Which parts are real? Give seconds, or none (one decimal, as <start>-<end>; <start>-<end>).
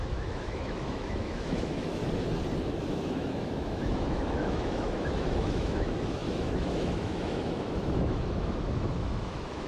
2.0-2.6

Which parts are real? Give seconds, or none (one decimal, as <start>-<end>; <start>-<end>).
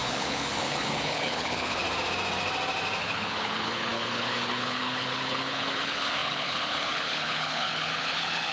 1.8-3.0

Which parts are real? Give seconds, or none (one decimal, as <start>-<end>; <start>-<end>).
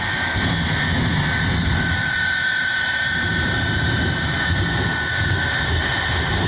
0.0-6.5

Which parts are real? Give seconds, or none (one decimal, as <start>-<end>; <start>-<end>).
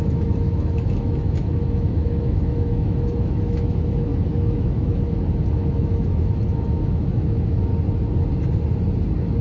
7.7-9.4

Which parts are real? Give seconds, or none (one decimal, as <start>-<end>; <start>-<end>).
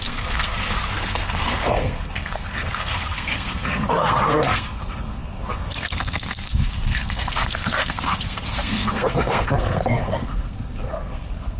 none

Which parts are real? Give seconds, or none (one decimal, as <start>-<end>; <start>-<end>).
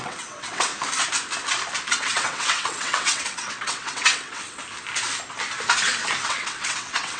0.7-1.9; 4.6-6.2